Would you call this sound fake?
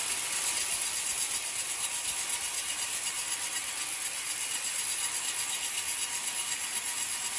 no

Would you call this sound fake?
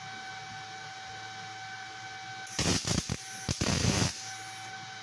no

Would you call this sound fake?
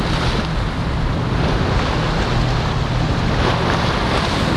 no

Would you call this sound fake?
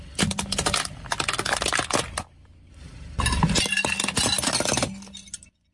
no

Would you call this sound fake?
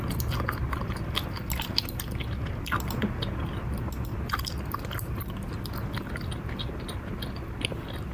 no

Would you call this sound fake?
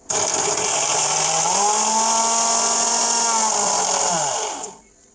no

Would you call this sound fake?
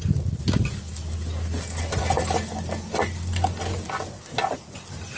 no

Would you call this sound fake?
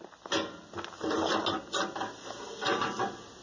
no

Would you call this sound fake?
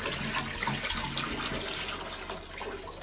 no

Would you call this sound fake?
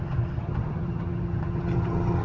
yes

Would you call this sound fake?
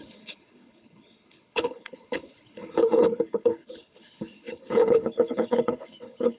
yes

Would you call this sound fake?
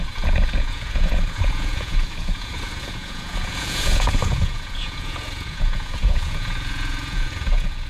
yes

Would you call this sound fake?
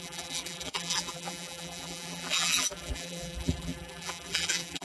yes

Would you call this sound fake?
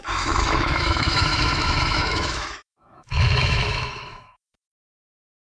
yes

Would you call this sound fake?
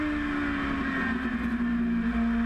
no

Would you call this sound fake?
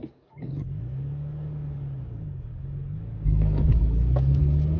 yes